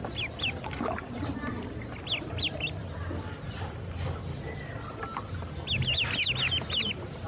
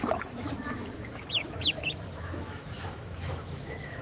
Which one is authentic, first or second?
first